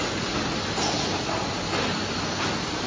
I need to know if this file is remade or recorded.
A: recorded